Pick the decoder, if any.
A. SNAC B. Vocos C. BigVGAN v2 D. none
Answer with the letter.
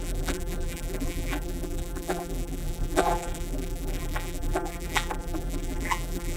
C